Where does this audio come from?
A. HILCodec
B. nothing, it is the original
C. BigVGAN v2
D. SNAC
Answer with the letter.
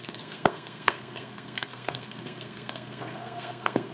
D